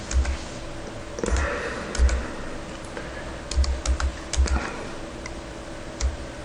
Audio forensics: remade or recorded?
recorded